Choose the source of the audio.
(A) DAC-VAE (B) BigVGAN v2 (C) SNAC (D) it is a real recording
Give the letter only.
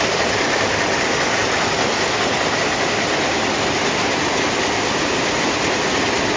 D